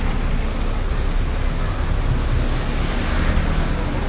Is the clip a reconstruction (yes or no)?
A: no